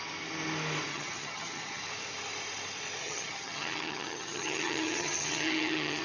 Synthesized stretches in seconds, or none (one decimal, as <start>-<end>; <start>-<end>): 0.9-1.8; 3.0-6.0